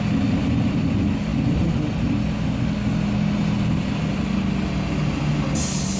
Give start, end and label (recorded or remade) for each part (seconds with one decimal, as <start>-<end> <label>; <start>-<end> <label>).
0.0-6.0 recorded